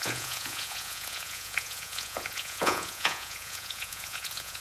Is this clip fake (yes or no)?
yes